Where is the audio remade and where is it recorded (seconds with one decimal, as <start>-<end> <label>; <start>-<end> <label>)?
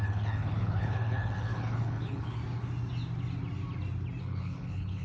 0.0-2.4 remade; 2.4-4.2 recorded; 4.2-5.0 remade